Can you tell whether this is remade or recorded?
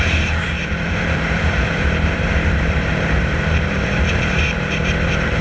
remade